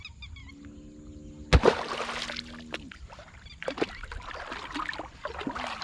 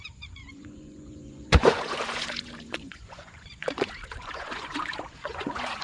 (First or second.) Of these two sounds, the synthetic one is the second